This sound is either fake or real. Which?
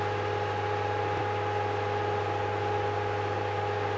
real